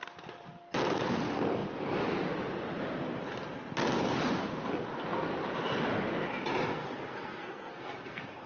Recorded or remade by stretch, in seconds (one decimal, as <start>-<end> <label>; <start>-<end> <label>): 0.0-6.7 recorded; 6.7-8.5 remade